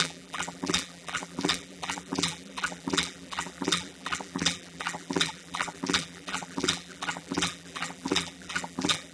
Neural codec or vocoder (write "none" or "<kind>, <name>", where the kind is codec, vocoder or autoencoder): vocoder, BigVGAN v2